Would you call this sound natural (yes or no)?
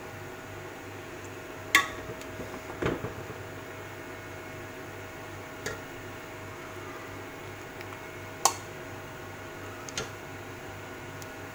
yes